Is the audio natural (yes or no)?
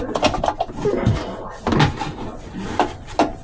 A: yes